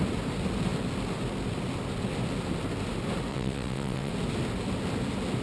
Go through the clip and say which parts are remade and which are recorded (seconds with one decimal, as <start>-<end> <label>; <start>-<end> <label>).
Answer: 0.0-3.3 recorded; 3.3-4.1 remade; 4.1-5.4 recorded

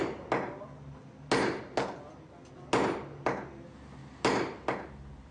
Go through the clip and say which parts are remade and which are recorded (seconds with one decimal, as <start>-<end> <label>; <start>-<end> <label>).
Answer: 0.0-5.3 recorded

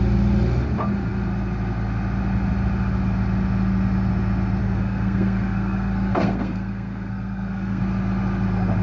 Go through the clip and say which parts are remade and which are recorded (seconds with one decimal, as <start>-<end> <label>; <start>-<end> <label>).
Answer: 0.0-4.6 recorded; 4.6-7.8 remade; 7.8-8.8 recorded

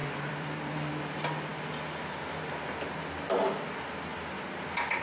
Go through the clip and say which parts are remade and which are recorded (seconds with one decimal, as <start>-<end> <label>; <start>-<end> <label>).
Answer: 0.0-1.0 remade; 1.0-5.0 recorded

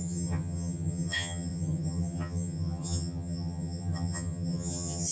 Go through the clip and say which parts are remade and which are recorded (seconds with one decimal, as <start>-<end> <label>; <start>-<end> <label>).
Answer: 0.0-5.1 remade

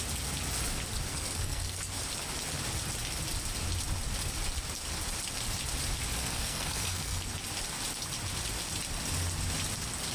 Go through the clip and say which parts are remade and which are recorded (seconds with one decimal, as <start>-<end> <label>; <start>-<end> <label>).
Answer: 0.0-1.1 recorded; 1.1-2.0 remade; 2.0-6.2 recorded; 6.2-7.3 remade; 7.3-10.1 recorded